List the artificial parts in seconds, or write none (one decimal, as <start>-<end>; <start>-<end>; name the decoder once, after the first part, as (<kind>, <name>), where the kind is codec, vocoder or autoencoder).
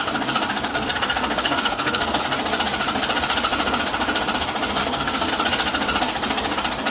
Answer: 0.7-2.2 (codec, SNAC); 4.8-5.3